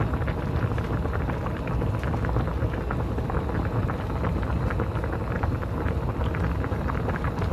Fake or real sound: real